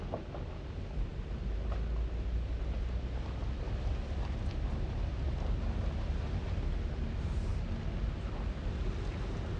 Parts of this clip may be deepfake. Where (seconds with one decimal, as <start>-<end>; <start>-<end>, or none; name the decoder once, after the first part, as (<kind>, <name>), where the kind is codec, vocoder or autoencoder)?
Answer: none